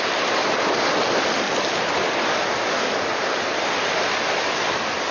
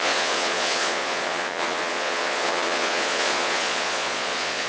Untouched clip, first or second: first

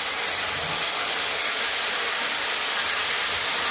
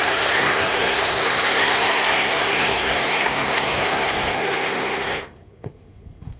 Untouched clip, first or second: first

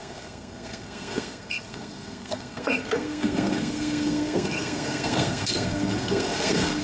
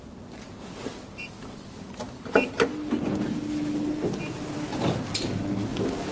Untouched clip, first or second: second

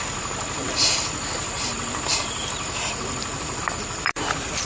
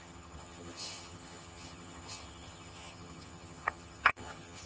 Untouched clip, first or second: first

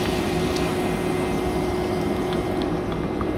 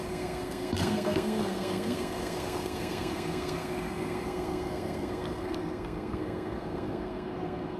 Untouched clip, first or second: first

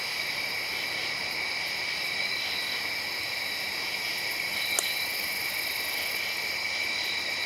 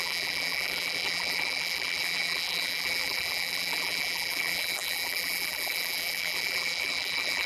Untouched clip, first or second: first